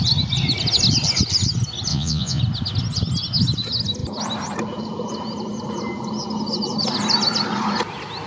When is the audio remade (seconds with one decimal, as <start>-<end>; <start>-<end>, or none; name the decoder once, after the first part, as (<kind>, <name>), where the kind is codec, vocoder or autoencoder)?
1.9-2.4 (vocoder, Vocos)